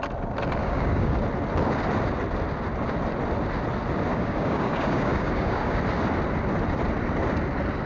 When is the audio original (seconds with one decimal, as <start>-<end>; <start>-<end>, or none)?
0.0-0.6; 1.2-4.1; 5.8-7.9